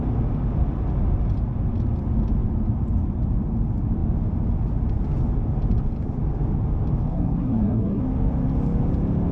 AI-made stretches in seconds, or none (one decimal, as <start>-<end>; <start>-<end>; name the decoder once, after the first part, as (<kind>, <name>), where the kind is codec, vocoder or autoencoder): 7.1-8.0 (codec, SNAC)